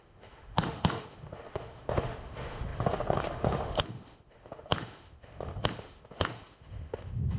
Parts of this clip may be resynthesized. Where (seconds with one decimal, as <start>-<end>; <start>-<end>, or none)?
0.0-7.4